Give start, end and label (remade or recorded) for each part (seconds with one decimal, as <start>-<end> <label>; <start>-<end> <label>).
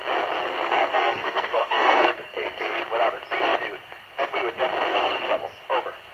0.0-0.4 recorded; 0.4-2.8 remade; 2.8-4.9 recorded; 4.9-5.6 remade; 5.6-6.1 recorded